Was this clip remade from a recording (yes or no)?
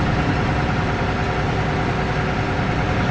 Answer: yes